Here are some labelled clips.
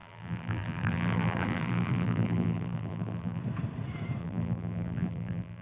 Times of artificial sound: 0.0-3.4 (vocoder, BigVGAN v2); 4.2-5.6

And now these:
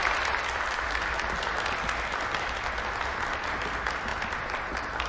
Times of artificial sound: none